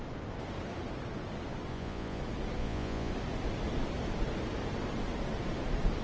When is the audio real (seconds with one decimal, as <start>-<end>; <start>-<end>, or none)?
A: 0.0-1.7; 2.2-2.6; 3.1-6.0